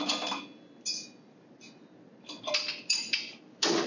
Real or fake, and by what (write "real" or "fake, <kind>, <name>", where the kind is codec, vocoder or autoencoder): real